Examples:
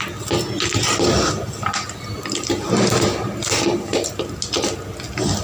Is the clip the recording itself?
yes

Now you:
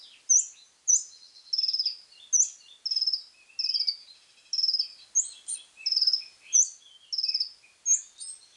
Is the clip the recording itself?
yes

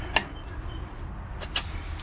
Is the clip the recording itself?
yes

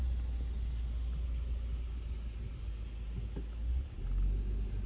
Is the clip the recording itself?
yes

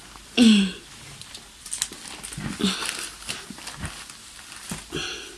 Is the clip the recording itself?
yes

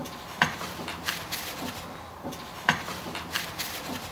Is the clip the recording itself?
yes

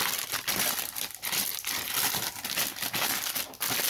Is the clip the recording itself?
no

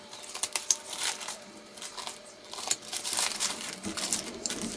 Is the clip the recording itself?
no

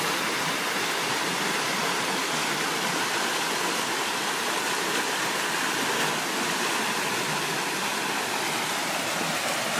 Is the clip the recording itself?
no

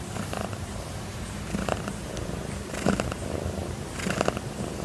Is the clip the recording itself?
no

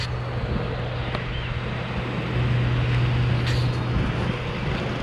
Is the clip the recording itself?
yes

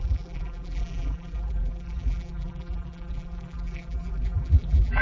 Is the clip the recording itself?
no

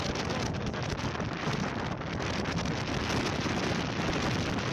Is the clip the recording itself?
yes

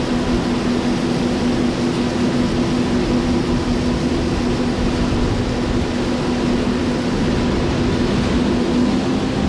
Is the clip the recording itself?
yes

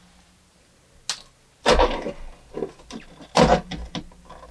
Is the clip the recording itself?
yes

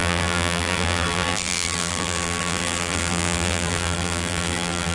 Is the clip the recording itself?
no